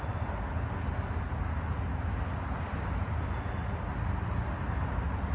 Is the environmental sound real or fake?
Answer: real